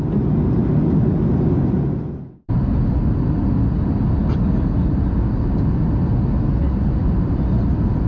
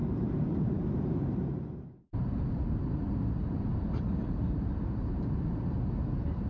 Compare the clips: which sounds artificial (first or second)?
second